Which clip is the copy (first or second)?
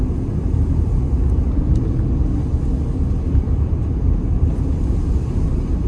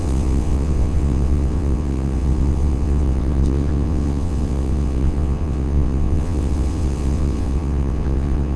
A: second